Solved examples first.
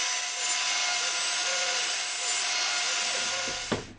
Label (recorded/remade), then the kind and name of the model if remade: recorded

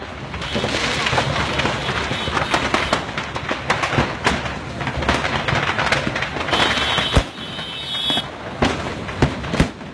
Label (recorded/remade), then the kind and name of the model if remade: recorded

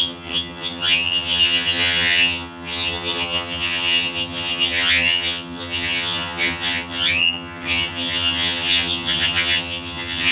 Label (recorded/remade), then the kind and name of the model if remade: remade, vocoder, HiFi-GAN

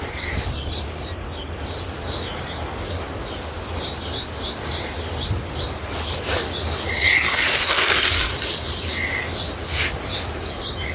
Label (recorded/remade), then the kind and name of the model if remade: recorded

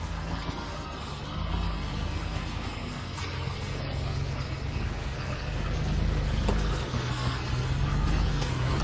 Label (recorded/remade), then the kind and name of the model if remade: remade, codec, SNAC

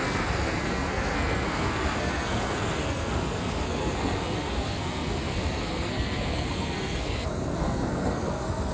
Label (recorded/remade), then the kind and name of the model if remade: remade, codec, SNAC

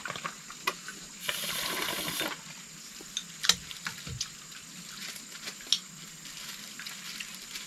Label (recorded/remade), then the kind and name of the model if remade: recorded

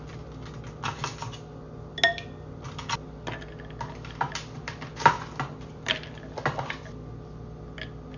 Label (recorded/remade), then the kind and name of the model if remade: recorded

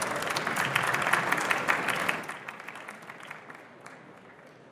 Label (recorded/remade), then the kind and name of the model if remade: recorded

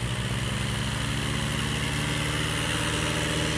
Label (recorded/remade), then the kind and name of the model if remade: recorded